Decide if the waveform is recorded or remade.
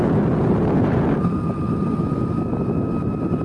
recorded